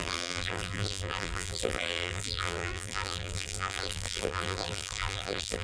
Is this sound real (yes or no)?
no